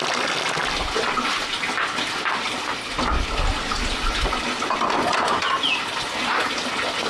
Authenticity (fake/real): real